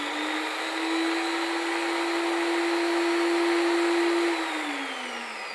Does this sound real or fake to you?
real